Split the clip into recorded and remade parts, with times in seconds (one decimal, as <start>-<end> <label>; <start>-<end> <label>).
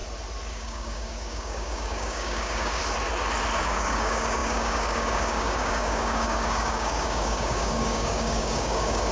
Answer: 0.0-0.5 recorded; 0.5-2.8 remade; 2.8-3.6 recorded; 3.6-9.1 remade